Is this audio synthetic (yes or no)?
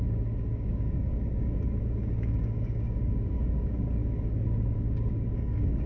yes